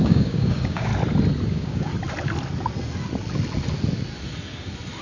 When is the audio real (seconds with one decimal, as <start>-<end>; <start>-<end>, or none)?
0.9-1.5; 1.9-5.0